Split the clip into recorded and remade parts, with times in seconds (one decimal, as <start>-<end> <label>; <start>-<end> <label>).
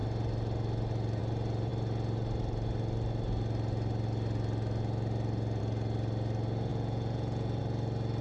0.0-6.7 recorded; 6.7-7.6 remade; 7.6-8.2 recorded